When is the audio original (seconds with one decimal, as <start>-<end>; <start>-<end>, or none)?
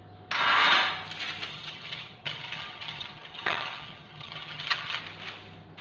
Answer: 0.0-1.5; 5.0-5.8